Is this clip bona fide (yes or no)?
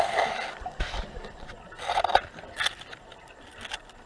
yes